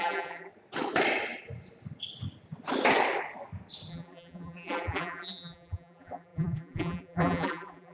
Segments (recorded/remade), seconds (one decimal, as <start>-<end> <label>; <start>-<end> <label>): 0.0-0.5 remade; 0.5-3.9 recorded; 3.9-7.9 remade